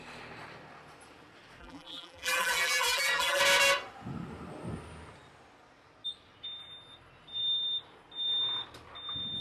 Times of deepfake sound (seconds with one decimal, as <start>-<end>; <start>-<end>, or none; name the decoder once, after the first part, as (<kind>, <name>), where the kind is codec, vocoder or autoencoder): 1.6-3.4 (vocoder, BigVGAN v2)